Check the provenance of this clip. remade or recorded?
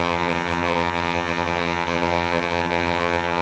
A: remade